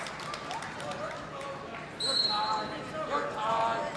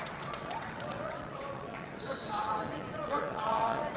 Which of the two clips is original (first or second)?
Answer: first